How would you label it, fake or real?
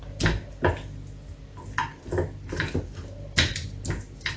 real